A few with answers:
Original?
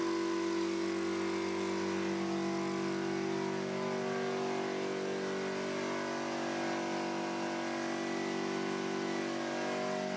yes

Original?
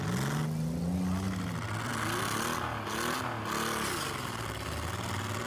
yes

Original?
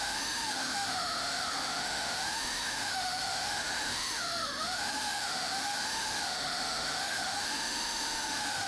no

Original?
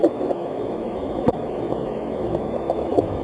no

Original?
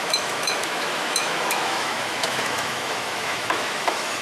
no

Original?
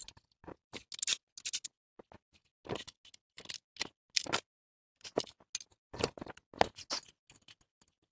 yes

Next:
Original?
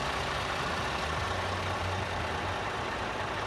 yes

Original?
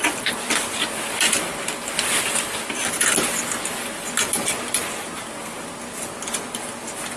yes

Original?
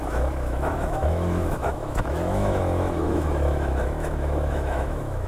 no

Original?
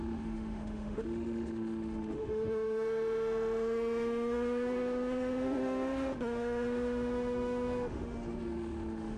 no